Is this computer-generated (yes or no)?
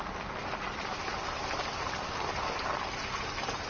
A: no